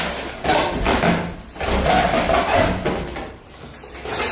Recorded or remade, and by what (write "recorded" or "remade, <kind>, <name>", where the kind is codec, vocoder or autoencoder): recorded